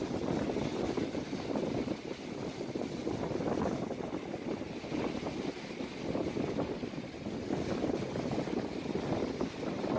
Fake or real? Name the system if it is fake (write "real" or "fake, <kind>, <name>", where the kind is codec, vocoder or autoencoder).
real